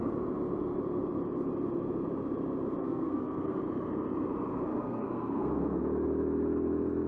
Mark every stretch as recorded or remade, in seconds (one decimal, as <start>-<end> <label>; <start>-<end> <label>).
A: 0.0-2.8 recorded; 2.8-3.6 remade; 3.6-4.7 recorded; 4.7-5.8 remade; 5.8-7.1 recorded